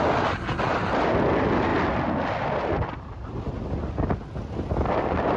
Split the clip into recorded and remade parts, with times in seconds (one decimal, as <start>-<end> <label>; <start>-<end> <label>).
0.0-5.4 recorded